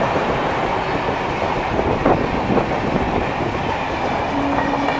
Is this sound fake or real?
real